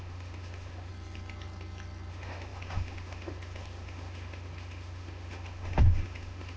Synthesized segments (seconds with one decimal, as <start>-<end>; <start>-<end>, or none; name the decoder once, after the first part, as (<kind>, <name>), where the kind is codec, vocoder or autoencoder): 0.0-0.9 (autoencoder, DAC-VAE); 2.1-6.6